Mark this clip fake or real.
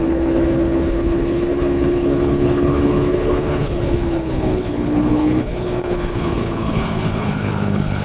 fake